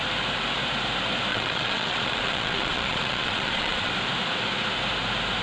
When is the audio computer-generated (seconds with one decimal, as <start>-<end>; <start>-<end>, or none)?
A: 1.3-3.9